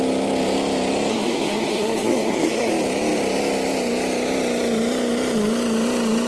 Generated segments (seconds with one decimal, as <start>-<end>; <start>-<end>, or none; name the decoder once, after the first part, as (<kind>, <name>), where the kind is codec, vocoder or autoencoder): 1.1-2.7 (codec, SNAC)

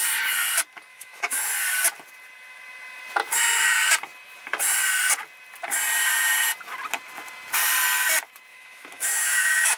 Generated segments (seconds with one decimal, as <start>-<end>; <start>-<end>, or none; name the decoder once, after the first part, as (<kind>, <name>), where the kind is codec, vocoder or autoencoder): 0.9-1.4 (autoencoder, DAC-VAE); 8.5-9.8

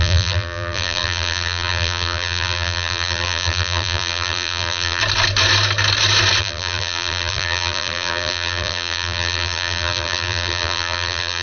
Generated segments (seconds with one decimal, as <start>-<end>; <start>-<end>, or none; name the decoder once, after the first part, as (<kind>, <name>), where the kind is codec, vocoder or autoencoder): 0.0-5.0 (vocoder, BigVGAN v2); 6.4-11.4

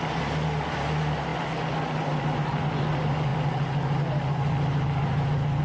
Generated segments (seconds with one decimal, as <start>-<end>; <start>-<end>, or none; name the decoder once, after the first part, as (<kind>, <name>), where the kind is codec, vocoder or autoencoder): none

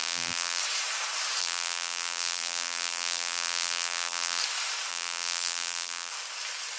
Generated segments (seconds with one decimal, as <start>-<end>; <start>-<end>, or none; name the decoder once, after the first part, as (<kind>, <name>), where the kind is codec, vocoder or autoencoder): 0.0-0.6 (vocoder, BigVGAN v2); 1.4-4.4; 4.9-6.1

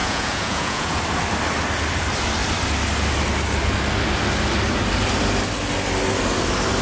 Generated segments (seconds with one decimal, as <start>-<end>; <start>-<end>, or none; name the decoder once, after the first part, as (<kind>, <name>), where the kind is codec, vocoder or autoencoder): 0.0-1.0 (vocoder, Vocos)